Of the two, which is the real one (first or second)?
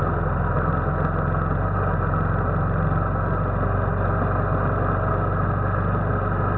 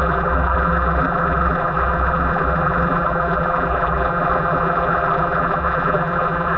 first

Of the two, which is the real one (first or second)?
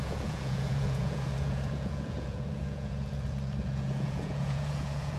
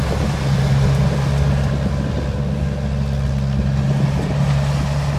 second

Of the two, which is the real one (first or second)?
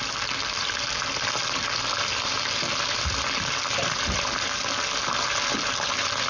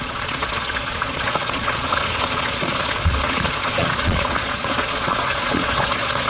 first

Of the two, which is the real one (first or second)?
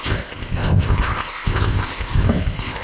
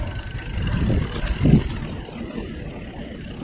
second